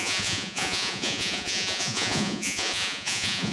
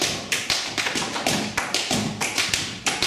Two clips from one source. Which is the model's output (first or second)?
first